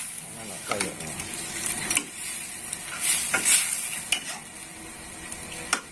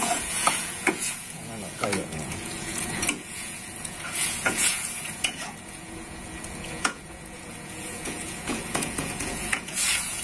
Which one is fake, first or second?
second